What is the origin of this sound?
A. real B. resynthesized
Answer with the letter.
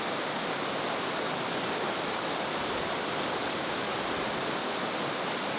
A